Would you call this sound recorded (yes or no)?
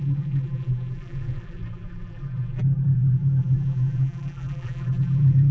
no